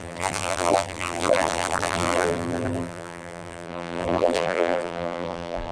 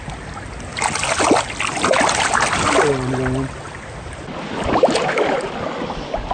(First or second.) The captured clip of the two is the second